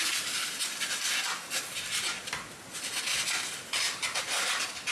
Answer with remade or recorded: recorded